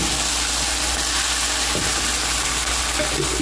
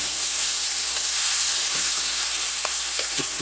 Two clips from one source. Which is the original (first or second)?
first